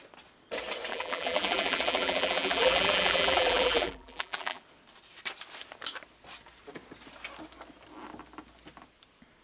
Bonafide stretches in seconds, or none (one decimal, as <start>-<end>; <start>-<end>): 0.0-0.9; 4.6-9.4